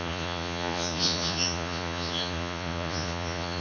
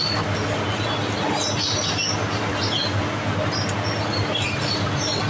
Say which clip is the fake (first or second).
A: first